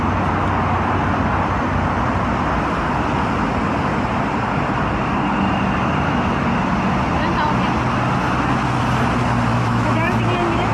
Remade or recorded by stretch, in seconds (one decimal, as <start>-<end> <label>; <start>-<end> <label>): 0.0-9.5 recorded; 9.5-10.0 remade; 10.0-10.7 recorded

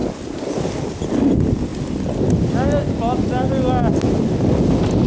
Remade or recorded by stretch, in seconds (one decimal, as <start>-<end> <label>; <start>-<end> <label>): 0.0-5.1 recorded

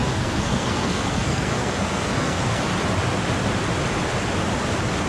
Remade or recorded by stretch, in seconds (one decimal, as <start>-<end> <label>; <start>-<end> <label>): 0.0-2.7 remade; 2.7-5.1 recorded

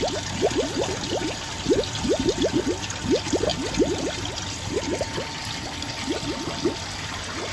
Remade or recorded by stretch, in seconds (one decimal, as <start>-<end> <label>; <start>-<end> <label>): 0.0-7.5 recorded

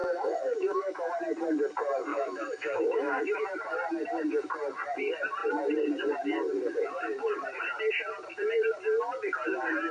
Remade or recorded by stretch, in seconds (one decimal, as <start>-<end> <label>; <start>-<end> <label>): 0.0-1.1 remade; 1.1-2.1 recorded; 2.1-3.4 remade; 3.4-9.9 recorded

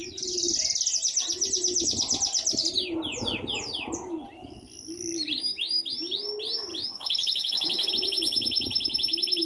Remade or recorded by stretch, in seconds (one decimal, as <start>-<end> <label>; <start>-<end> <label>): 0.0-6.7 recorded; 6.7-7.9 remade; 7.9-9.4 recorded

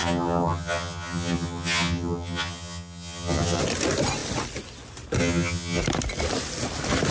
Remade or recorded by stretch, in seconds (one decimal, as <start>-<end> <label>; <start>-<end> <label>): 0.0-3.6 remade; 3.6-5.2 recorded; 5.2-5.8 remade; 5.8-7.1 recorded